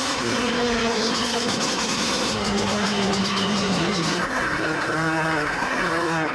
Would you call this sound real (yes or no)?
no